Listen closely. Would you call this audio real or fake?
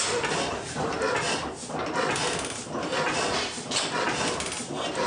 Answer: real